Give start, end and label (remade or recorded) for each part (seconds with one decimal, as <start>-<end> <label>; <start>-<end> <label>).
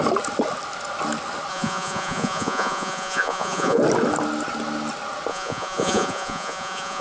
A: 0.0-1.5 recorded; 1.5-3.8 remade; 3.8-5.3 recorded; 5.3-7.0 remade